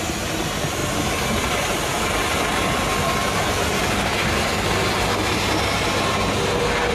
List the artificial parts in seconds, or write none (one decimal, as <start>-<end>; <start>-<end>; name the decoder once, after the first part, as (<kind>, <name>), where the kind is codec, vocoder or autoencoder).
none